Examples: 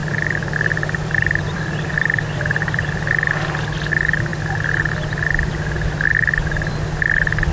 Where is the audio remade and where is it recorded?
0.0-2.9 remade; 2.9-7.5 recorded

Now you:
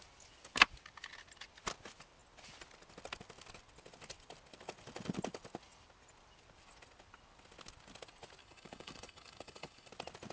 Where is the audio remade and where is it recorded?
0.0-8.4 recorded; 8.4-9.9 remade; 9.9-10.3 recorded

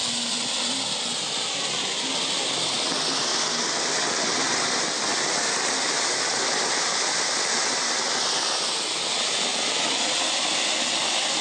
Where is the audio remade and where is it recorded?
0.0-11.4 recorded

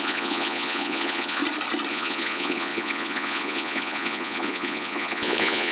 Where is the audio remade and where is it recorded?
0.0-1.4 remade; 1.4-1.9 recorded; 1.9-5.7 remade

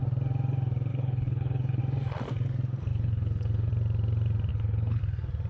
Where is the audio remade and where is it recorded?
0.0-0.9 recorded; 0.9-1.8 remade; 1.8-2.9 recorded; 2.9-3.7 remade; 3.7-4.5 recorded; 4.5-5.0 remade; 5.0-5.5 recorded